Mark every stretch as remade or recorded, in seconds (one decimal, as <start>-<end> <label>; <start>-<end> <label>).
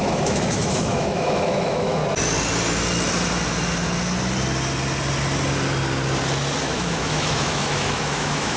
0.0-2.0 remade; 2.0-6.6 recorded; 6.6-8.6 remade